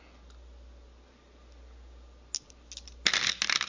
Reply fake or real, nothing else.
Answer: real